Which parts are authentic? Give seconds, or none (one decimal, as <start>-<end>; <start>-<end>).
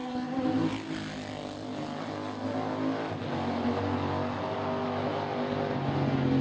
0.0-6.4